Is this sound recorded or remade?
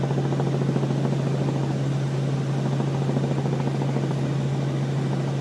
recorded